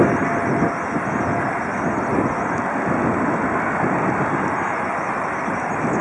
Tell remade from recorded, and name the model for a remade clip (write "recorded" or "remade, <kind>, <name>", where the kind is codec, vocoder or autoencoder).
recorded